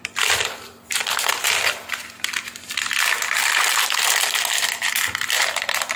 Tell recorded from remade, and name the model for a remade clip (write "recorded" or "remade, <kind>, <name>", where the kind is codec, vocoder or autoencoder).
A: remade, vocoder, BigVGAN v2